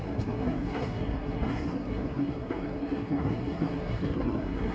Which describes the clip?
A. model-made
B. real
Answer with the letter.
A